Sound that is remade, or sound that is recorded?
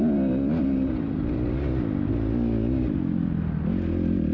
recorded